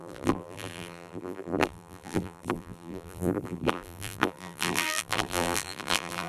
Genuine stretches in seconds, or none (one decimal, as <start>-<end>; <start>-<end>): none